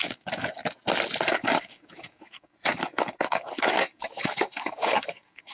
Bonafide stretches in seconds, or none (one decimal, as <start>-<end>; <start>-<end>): 0.6-1.3